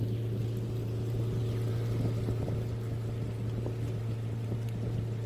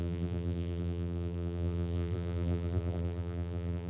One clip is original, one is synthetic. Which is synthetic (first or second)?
second